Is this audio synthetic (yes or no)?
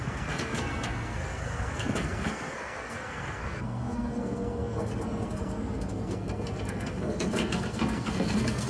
yes